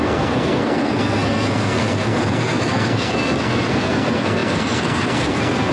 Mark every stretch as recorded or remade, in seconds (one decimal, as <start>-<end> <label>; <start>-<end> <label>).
0.0-5.7 remade